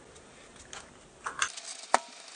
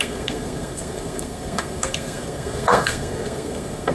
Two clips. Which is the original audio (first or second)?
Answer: first